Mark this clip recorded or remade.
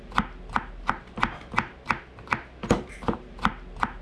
recorded